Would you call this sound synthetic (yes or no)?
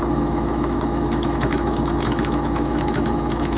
yes